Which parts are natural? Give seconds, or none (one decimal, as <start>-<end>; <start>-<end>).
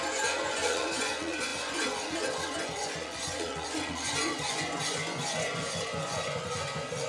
none